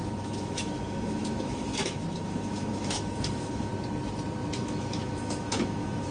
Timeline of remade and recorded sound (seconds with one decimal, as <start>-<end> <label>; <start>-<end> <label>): 0.0-3.7 remade; 3.7-4.6 recorded; 4.6-6.1 remade